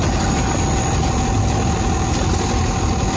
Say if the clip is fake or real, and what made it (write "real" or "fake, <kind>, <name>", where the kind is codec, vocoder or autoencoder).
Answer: real